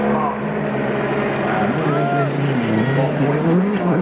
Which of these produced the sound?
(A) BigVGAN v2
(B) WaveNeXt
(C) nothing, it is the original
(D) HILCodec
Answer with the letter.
C